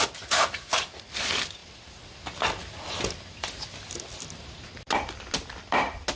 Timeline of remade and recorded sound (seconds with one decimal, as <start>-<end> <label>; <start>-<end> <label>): 0.0-6.2 recorded